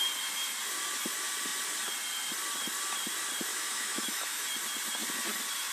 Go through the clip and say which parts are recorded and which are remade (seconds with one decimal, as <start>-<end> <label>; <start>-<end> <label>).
0.0-3.5 recorded; 3.5-4.4 remade; 4.4-5.7 recorded